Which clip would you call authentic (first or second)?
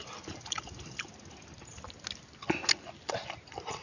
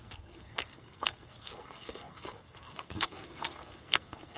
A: first